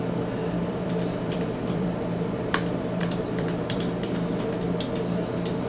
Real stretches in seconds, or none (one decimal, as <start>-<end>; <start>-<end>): 0.0-0.4; 3.8-5.7